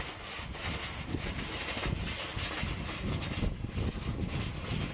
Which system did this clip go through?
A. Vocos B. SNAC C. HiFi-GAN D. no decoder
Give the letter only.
D